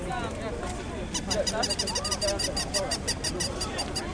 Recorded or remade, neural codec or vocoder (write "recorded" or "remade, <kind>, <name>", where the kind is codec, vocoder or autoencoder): recorded